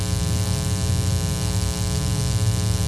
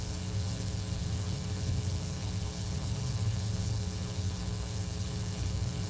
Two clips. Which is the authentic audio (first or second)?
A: first